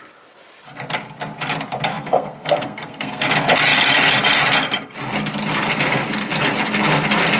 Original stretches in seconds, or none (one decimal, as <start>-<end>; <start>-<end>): 0.0-1.9; 3.2-7.4